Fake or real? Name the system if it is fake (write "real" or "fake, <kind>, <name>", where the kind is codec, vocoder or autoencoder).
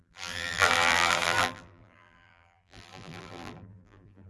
fake, vocoder, BigVGAN v2